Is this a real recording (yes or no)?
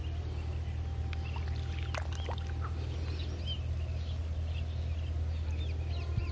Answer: yes